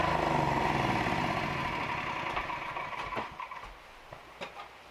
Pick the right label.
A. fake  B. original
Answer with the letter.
B